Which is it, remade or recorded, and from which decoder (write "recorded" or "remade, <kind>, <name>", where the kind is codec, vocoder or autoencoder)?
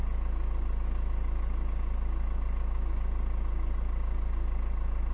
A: recorded